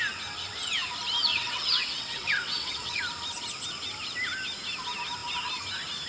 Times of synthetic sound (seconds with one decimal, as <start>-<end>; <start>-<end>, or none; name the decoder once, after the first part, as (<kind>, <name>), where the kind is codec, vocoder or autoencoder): 1.3-3.0 (vocoder, WaveNeXt)